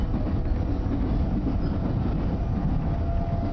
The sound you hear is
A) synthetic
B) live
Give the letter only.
B